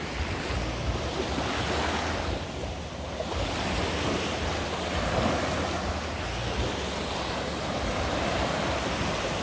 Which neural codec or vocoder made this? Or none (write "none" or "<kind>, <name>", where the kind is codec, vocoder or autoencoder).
none